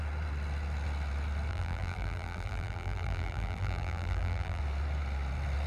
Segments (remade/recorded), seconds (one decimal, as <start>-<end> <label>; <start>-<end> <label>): 0.0-1.5 recorded; 1.5-4.6 remade; 4.6-5.7 recorded